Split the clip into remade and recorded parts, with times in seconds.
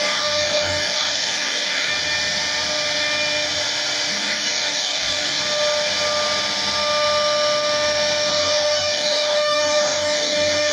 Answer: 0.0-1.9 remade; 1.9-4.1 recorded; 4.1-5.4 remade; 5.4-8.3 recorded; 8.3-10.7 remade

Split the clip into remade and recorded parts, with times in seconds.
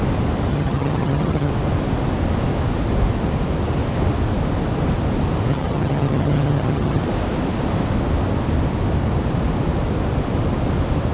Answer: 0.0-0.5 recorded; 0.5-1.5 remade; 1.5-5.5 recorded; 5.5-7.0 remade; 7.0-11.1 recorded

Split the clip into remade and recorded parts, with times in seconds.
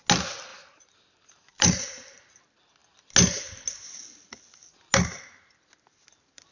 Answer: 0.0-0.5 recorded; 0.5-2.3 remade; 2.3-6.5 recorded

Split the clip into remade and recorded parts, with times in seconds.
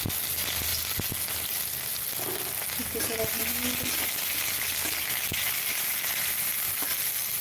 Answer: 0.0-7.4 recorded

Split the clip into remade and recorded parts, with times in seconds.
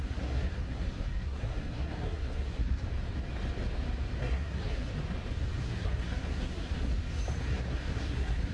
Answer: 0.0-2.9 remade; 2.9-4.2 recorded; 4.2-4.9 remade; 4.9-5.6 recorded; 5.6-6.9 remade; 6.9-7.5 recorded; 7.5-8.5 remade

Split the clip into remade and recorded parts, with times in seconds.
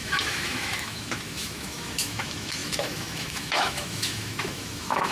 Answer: 0.0-5.1 remade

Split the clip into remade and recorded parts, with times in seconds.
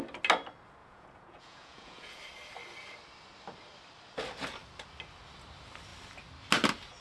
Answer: 0.0-0.8 recorded; 0.8-2.2 remade; 2.2-7.0 recorded